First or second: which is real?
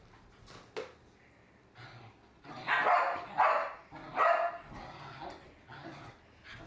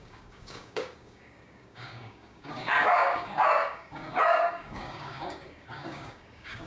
first